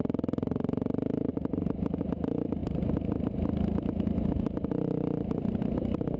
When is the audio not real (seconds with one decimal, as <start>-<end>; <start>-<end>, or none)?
0.0-1.3; 2.0-6.2